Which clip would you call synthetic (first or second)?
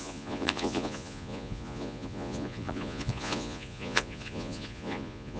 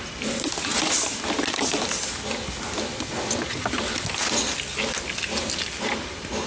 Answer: first